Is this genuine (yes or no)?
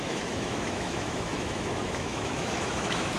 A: no